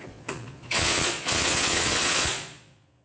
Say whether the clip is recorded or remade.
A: remade